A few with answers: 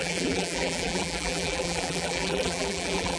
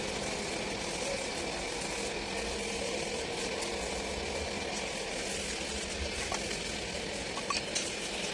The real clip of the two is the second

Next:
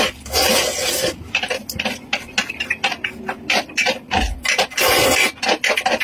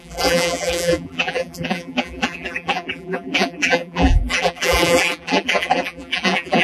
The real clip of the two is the first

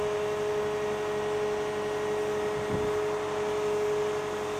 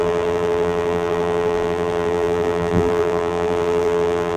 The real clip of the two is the first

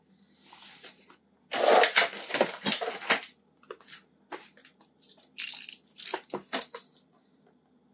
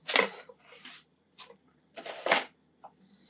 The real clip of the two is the first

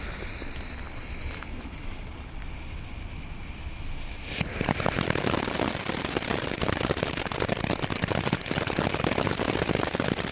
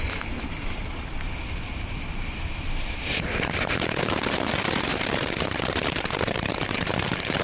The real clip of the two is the first